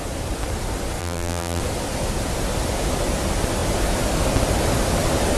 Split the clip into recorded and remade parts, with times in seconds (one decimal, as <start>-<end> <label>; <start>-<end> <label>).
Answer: 0.0-1.0 recorded; 1.0-1.6 remade; 1.6-5.4 recorded